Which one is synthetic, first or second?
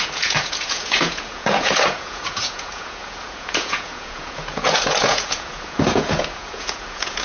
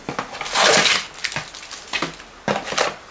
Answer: first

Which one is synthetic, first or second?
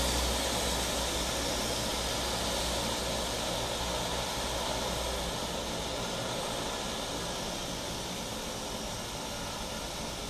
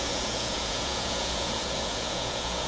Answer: second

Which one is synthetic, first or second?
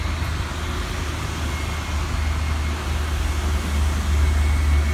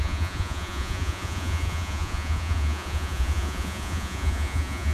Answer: second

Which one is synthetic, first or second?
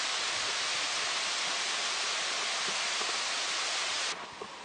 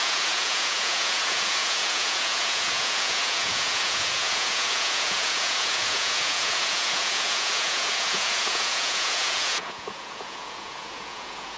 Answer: second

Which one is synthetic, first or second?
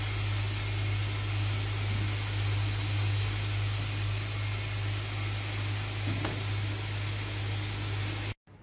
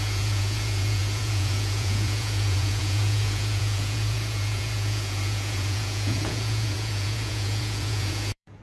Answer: second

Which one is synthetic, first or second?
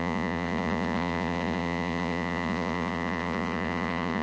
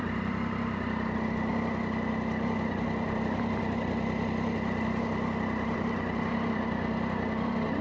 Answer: first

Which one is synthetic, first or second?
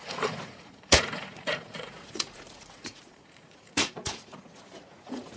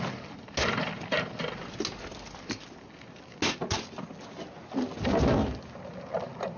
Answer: first